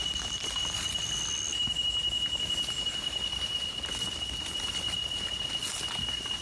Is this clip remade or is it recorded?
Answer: recorded